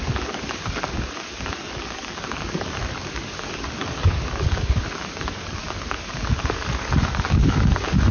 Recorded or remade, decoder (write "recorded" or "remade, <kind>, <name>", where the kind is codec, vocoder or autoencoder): remade, codec, DAC